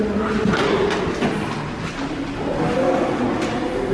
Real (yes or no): yes